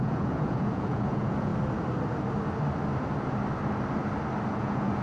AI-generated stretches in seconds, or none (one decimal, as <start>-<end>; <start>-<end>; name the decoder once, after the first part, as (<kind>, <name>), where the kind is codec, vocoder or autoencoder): 0.0-1.5 (vocoder, Vocos); 4.5-5.0